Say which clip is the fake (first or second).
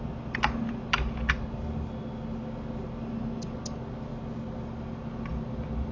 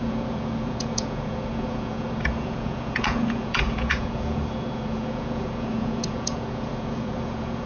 second